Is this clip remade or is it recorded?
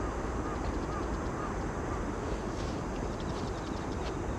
recorded